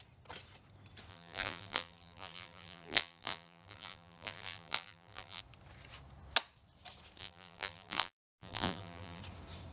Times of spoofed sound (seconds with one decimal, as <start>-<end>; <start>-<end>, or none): 1.1-5.4; 7.2-9.2